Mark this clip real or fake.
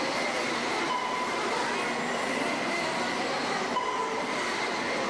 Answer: real